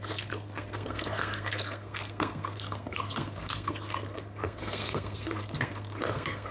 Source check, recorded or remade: remade